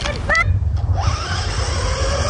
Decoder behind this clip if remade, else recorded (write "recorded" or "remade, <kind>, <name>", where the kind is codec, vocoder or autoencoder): recorded